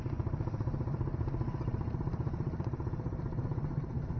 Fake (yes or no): yes